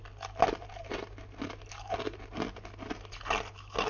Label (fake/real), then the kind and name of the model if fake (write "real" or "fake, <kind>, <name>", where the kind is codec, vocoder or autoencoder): real